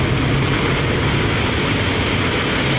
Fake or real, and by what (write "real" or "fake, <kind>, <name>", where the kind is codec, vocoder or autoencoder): real